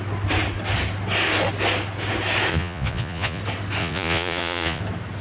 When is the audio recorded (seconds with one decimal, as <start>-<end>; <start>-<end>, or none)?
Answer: 0.0-2.5; 3.4-3.8; 4.8-5.2